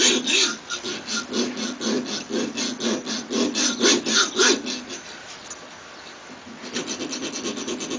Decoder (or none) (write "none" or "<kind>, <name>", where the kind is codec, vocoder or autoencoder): none